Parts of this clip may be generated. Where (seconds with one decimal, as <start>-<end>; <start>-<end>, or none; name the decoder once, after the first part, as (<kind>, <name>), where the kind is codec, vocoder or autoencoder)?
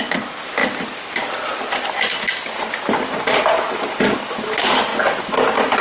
none